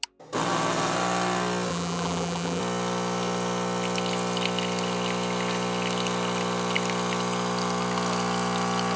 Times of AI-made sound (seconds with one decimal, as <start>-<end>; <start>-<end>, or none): 1.7-2.6